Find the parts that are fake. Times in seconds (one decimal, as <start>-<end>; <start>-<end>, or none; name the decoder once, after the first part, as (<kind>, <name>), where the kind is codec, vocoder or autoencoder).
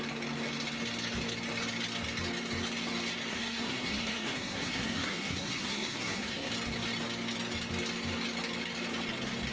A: 3.3-6.5 (codec, SNAC)